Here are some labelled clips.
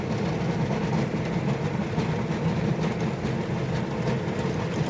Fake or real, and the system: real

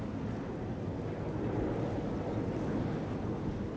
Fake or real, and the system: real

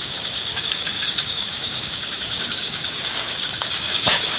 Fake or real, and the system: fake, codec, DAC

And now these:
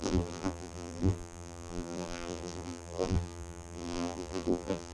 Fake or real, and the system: fake, vocoder, BigVGAN v2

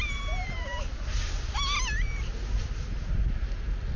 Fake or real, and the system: real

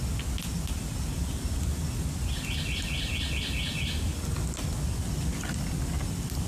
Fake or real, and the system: real